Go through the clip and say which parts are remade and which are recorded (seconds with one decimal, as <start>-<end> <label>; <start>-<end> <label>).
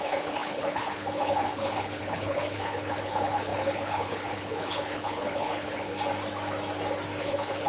0.0-5.9 remade; 5.9-7.2 recorded; 7.2-7.7 remade